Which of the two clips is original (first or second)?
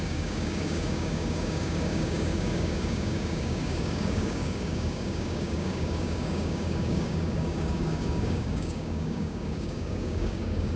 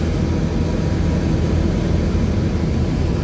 second